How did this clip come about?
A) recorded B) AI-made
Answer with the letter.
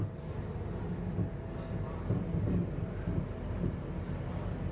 A